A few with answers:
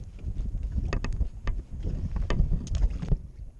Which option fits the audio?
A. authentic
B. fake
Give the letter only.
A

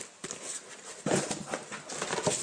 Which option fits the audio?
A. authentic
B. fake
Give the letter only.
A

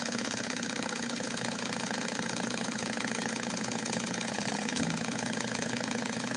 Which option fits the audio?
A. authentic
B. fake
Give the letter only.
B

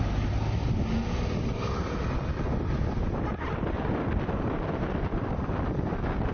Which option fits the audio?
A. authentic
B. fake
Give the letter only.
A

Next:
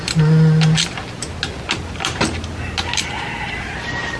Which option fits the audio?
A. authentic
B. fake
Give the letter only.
A